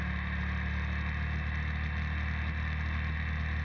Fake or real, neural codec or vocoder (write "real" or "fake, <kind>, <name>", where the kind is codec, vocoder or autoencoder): real